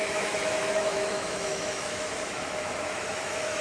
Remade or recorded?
remade